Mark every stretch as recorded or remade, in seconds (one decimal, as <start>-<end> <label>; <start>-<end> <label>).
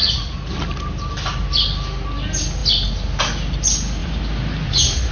0.0-0.5 remade; 0.5-5.1 recorded